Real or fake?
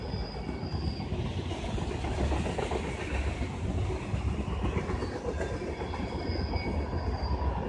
real